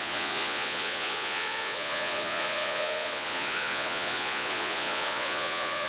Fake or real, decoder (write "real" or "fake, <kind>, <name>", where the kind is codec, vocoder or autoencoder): fake, vocoder, Vocos